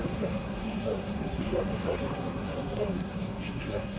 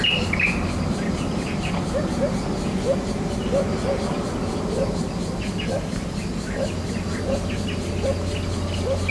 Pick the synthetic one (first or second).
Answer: first